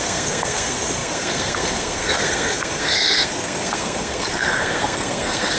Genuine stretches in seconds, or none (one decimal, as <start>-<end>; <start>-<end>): none